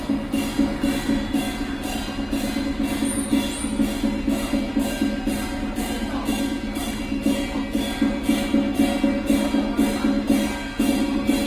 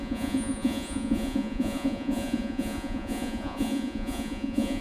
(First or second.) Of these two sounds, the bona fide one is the first